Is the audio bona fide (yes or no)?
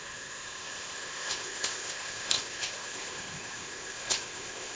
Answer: no